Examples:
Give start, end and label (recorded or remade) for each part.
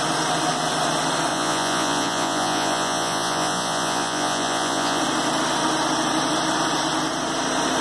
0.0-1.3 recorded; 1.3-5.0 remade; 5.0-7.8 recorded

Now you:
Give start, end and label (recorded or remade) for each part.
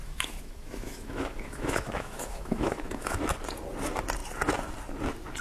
0.0-3.2 remade; 3.2-5.4 recorded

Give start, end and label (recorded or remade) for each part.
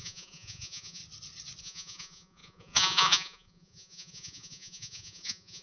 0.0-1.0 remade; 1.0-1.6 recorded; 1.6-5.6 remade